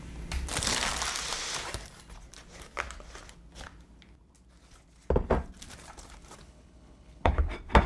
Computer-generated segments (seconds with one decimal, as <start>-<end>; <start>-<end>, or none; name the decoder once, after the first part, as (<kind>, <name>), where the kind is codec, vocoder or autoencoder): 6.4-7.5 (codec, HILCodec)